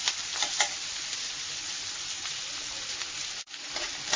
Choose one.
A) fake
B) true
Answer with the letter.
B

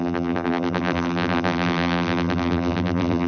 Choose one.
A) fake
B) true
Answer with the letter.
A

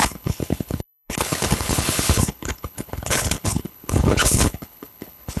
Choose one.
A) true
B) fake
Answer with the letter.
B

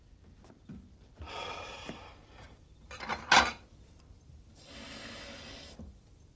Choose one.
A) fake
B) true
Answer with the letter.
B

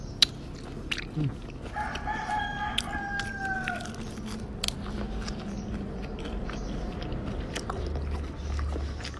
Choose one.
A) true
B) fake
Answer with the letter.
A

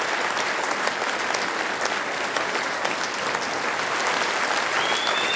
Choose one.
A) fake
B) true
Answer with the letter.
B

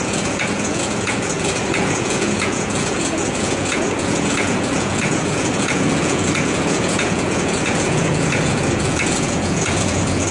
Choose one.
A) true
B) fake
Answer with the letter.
B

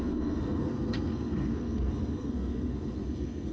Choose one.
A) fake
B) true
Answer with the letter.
A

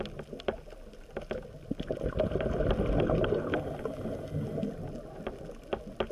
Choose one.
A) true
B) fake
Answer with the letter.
A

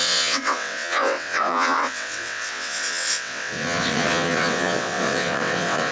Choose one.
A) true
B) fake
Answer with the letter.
B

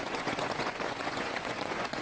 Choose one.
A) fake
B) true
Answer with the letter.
A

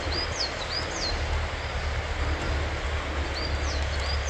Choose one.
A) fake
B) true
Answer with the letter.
B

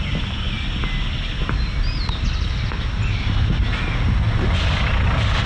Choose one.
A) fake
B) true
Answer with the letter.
B